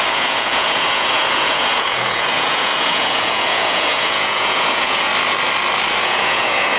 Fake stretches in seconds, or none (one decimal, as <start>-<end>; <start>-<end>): 0.0-5.1; 6.0-6.8